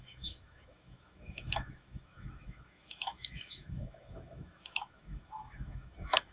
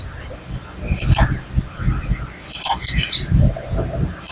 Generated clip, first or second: first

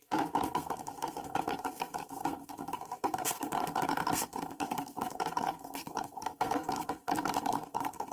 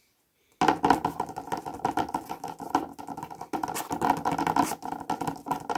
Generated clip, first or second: first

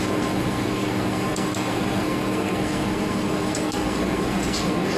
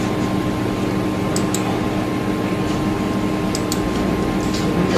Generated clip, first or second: first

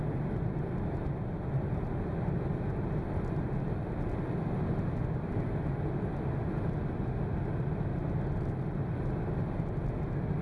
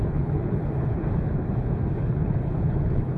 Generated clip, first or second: second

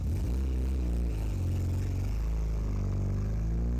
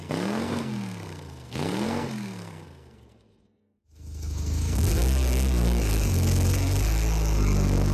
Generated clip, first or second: second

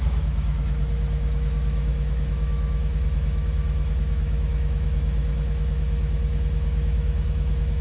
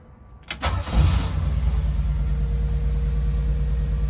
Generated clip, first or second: first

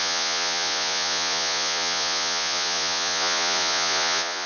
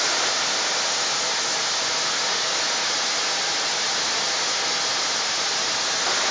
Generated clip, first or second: first